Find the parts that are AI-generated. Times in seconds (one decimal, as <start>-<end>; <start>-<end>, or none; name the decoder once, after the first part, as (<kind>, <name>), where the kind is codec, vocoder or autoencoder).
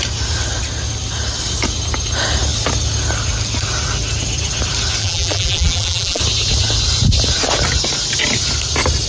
5.0-6.2 (vocoder, BigVGAN v2)